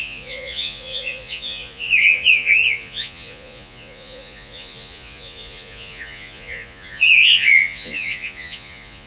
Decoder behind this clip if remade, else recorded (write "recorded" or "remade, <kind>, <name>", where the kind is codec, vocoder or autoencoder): remade, vocoder, Vocos